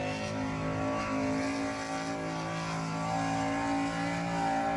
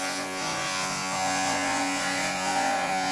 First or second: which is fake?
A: second